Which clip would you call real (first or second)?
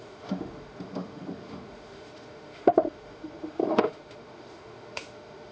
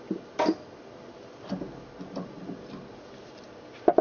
second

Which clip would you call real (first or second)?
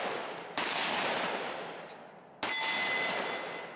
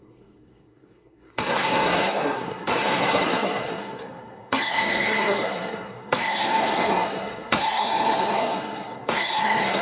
first